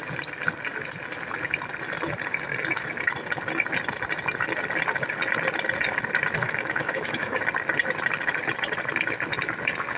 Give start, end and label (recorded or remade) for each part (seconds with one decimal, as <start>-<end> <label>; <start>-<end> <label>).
0.0-6.4 recorded; 6.4-7.4 remade; 7.4-10.0 recorded